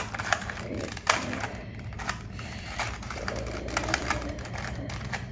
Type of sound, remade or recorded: remade